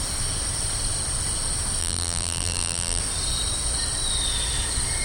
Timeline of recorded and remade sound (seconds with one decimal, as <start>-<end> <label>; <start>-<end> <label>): 0.0-1.8 recorded; 1.8-3.0 remade; 3.0-5.0 recorded